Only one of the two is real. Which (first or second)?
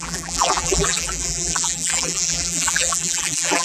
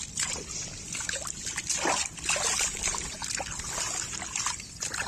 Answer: second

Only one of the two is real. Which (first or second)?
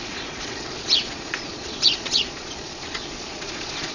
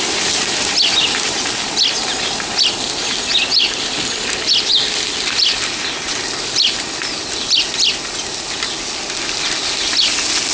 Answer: second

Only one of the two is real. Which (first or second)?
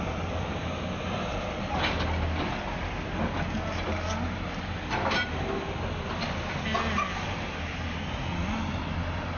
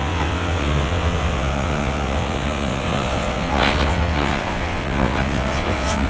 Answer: first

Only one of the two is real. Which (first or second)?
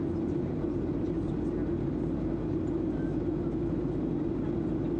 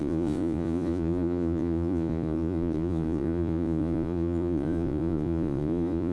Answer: first